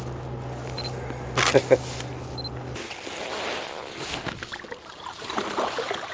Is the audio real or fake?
real